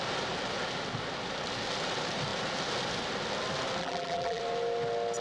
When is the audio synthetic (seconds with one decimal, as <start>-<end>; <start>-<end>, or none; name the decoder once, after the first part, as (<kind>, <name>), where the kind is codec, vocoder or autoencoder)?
3.8-4.4 (vocoder, BigVGAN v2)